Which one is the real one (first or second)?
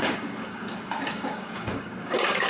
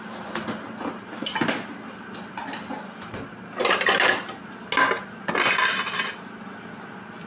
second